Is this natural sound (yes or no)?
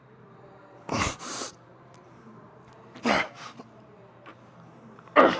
no